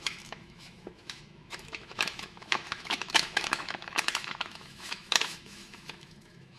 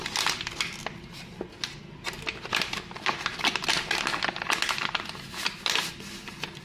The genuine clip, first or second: second